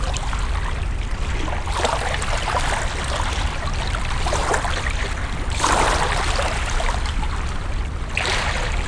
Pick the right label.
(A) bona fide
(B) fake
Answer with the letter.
A